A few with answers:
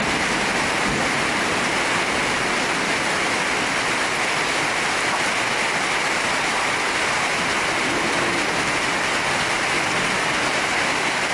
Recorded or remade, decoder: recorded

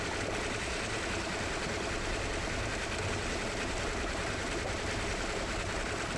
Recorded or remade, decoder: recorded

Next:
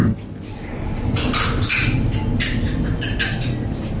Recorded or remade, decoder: recorded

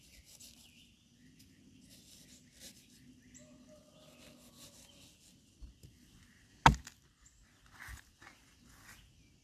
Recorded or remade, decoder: recorded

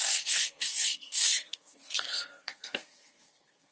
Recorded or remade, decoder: remade, codec, SNAC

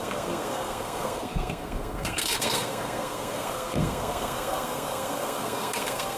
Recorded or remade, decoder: remade, codec, SNAC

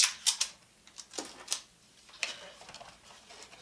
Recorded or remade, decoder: recorded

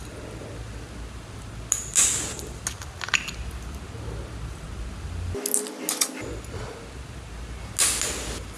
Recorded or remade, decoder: recorded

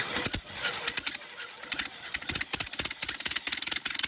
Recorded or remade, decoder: recorded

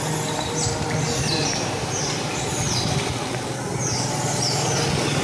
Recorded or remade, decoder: recorded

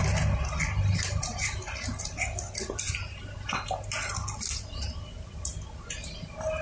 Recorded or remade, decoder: recorded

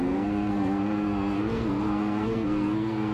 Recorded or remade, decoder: remade, codec, SNAC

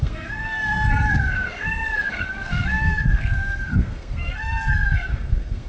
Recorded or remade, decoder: remade, codec, SNAC